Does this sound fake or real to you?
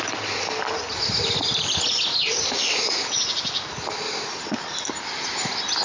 real